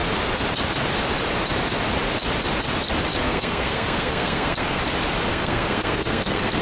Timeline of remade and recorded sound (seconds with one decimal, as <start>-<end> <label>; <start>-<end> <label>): 0.0-3.2 recorded; 3.2-4.8 remade; 4.8-5.3 recorded; 5.3-6.6 remade